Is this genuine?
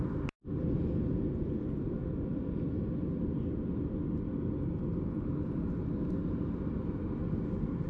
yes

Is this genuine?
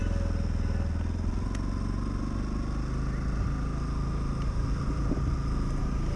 yes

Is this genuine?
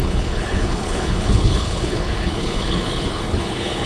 no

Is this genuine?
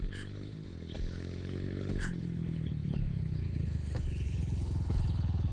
no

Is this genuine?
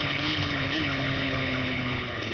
no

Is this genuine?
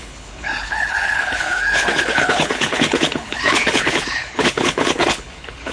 no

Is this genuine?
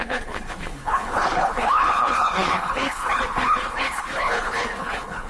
no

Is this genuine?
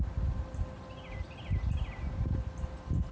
yes